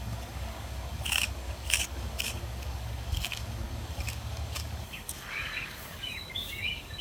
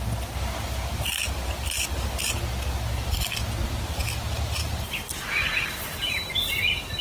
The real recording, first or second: second